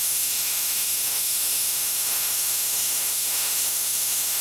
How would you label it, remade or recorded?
remade